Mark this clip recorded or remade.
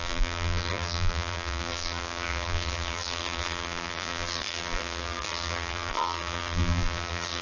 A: remade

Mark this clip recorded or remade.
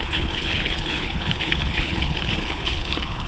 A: remade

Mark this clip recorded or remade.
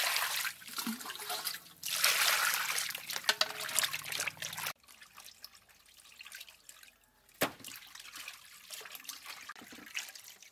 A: recorded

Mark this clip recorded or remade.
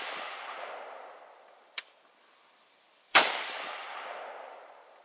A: remade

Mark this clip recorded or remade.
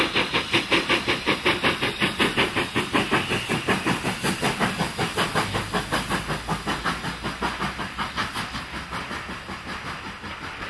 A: recorded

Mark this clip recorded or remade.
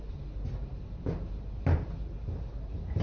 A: recorded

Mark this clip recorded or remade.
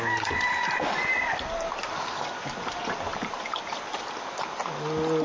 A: recorded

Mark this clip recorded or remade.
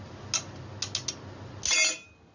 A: recorded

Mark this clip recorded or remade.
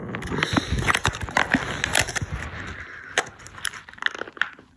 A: recorded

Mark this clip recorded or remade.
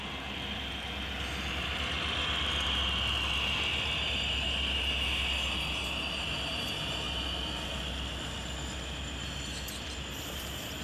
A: recorded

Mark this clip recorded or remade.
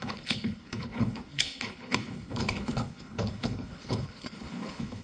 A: remade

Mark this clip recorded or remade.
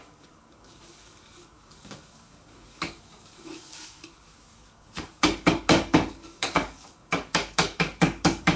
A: remade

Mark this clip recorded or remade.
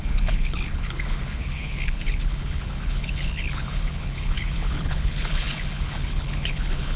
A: remade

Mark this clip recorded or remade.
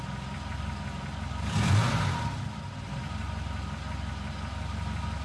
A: recorded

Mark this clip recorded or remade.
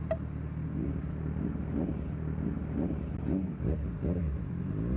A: recorded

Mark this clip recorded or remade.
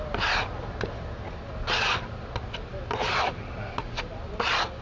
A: recorded